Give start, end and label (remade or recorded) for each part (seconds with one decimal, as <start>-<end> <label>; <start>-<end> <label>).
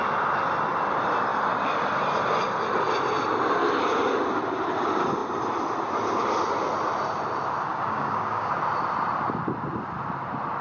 0.0-7.7 recorded; 7.7-8.5 remade; 8.5-10.6 recorded